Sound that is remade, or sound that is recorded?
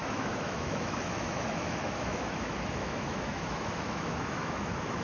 remade